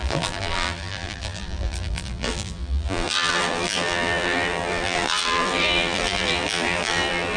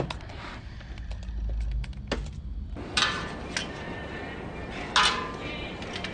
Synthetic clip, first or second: first